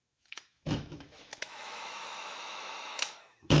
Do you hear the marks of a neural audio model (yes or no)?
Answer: yes